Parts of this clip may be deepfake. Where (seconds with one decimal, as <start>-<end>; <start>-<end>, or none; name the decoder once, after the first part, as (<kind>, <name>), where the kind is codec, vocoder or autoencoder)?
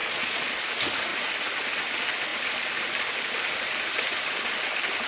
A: 0.0-0.5 (vocoder, Vocos)